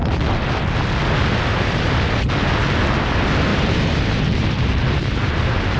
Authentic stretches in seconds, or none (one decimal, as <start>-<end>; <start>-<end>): 0.0-1.5; 2.3-3.5